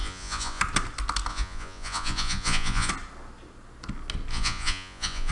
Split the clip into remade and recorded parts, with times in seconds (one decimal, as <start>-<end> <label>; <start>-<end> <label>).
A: 0.0-0.6 remade; 0.6-1.3 recorded; 1.3-2.9 remade; 2.9-4.3 recorded; 4.3-5.3 remade